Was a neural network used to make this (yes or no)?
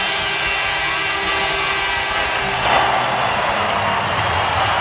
no